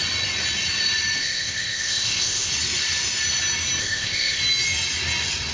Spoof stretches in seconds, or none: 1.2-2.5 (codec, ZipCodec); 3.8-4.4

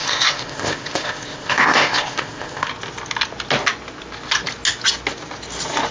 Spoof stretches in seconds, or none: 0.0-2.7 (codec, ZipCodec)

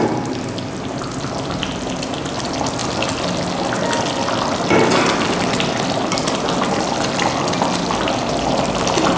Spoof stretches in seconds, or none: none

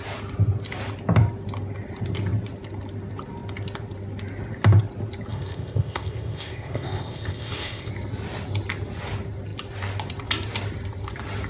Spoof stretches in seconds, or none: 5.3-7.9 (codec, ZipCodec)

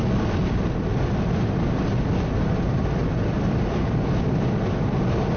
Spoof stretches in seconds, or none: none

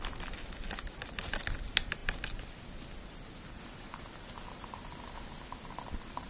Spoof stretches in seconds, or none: none

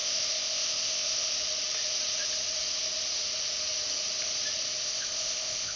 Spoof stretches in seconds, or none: 0.0-1.3 (codec, ZipCodec); 4.8-5.8

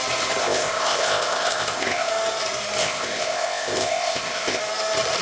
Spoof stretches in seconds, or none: 0.4-2.1 (codec, ZipCodec); 2.8-4.6